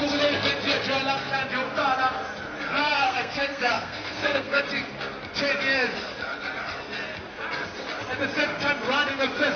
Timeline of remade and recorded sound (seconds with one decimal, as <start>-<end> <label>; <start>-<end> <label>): 0.0-2.8 recorded; 2.8-4.6 remade; 4.6-9.6 recorded